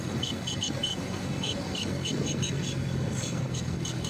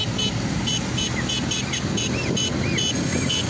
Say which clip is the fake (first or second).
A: first